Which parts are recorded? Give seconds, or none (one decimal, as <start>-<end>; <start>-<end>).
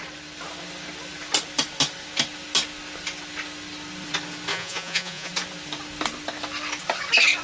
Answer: 0.0-4.5; 5.3-7.4